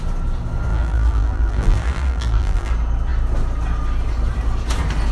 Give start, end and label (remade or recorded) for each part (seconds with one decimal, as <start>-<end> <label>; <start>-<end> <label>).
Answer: 0.0-0.7 recorded; 0.7-2.7 remade; 2.7-5.1 recorded